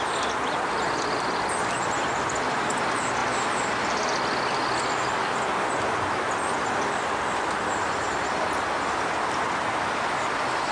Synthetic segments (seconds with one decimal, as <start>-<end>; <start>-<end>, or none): none